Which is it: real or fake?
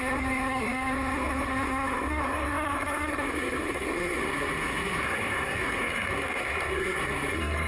fake